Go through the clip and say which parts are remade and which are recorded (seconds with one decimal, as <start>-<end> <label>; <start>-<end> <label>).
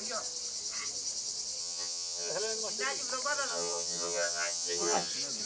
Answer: 0.0-1.6 recorded; 1.6-2.3 remade; 2.3-3.5 recorded; 3.5-5.1 remade; 5.1-5.5 recorded